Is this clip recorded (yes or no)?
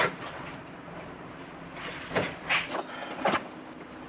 yes